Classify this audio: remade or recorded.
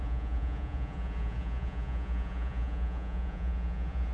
remade